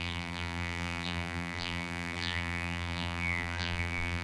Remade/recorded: remade